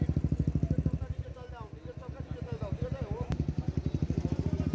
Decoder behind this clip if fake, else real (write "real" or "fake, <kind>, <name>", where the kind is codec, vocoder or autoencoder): real